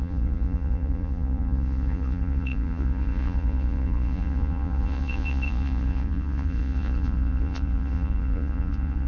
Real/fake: fake